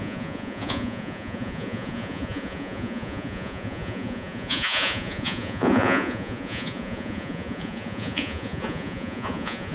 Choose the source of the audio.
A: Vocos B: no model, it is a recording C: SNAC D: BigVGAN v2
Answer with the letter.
A